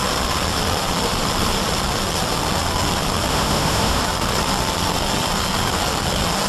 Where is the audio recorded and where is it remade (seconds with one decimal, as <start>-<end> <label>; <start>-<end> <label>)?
0.0-3.3 recorded; 3.3-4.0 remade; 4.0-6.5 recorded